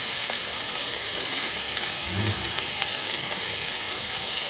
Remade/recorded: remade